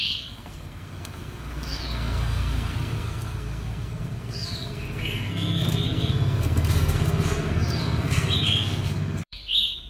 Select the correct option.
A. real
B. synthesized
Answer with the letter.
B